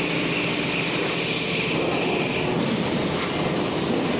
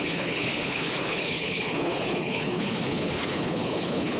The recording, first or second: first